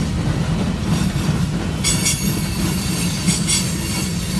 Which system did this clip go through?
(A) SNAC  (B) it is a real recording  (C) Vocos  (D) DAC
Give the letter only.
B